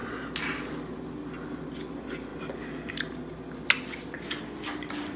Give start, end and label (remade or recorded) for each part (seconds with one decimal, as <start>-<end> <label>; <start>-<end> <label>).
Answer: 0.0-5.2 recorded